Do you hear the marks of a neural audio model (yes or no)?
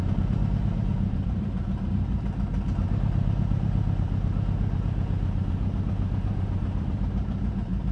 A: yes